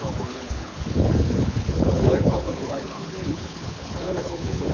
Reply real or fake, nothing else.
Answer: fake